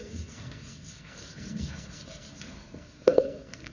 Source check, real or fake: fake